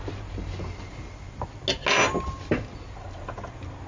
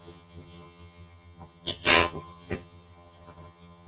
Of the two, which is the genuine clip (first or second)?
first